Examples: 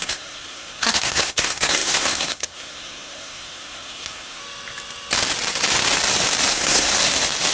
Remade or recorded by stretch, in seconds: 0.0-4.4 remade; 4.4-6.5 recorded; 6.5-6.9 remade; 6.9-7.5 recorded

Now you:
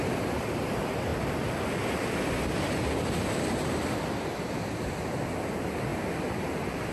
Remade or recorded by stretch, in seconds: 0.0-6.9 recorded

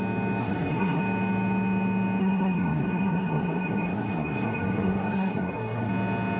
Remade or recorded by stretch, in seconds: 0.0-0.4 recorded; 0.4-1.0 remade; 1.0-2.2 recorded; 2.2-5.9 remade; 5.9-6.4 recorded

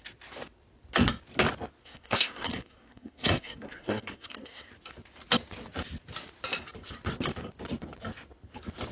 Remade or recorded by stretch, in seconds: 0.0-1.8 recorded; 1.8-4.7 remade; 4.7-8.9 recorded